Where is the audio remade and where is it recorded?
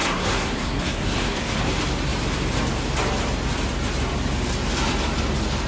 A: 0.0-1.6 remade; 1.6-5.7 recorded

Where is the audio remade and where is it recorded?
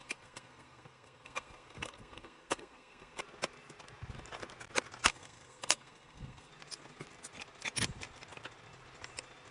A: 0.0-3.2 remade; 3.2-5.1 recorded; 5.1-6.5 remade; 6.5-9.5 recorded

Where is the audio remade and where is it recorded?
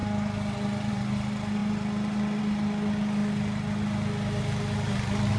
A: 0.0-5.4 recorded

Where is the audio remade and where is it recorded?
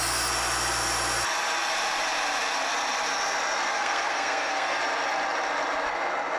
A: 0.0-3.7 recorded; 3.7-4.8 remade; 4.8-6.4 recorded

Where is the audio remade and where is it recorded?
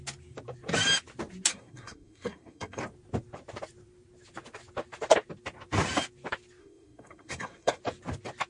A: 0.0-1.5 recorded; 1.5-2.8 remade; 2.8-6.6 recorded; 6.6-7.8 remade; 7.8-8.5 recorded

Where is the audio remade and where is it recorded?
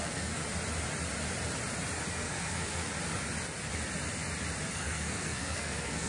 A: 0.0-0.4 remade; 0.4-2.1 recorded; 2.1-2.9 remade; 2.9-4.7 recorded; 4.7-6.1 remade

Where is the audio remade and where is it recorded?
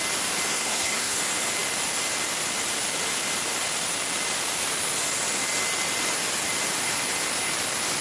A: 0.0-0.5 recorded; 0.5-1.2 remade; 1.2-8.0 recorded